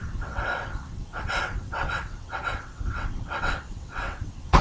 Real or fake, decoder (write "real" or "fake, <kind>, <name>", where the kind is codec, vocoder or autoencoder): fake, vocoder, WaveNeXt